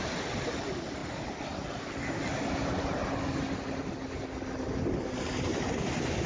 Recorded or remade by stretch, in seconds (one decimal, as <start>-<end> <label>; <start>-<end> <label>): 0.0-6.3 recorded